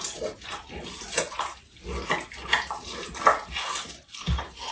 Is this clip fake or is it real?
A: real